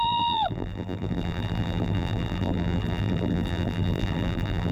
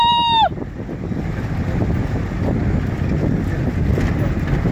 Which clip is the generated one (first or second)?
first